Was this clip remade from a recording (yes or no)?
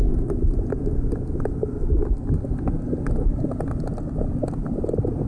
no